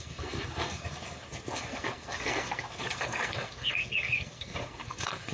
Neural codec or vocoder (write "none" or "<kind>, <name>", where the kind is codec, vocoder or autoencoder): codec, SNAC